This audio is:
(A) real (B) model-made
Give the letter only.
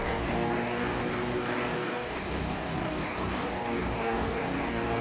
B